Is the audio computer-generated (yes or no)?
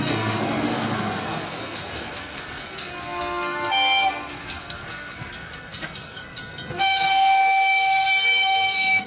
yes